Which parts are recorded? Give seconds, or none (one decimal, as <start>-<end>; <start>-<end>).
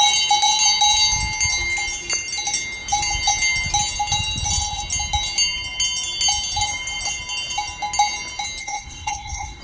0.0-8.6